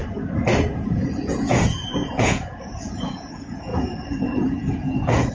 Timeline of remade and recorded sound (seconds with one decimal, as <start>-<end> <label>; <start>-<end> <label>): 0.0-0.6 recorded; 0.6-5.3 remade